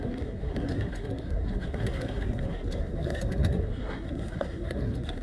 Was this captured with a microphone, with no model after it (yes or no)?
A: no